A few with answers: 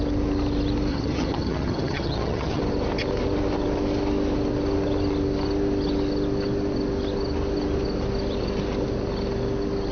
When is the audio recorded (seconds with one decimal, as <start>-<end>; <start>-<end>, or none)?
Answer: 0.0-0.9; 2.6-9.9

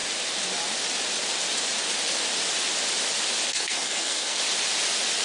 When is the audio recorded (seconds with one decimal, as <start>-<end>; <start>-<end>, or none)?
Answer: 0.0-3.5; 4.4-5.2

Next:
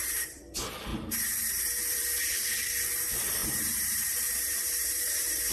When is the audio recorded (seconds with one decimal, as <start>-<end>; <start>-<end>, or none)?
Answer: 0.9-1.5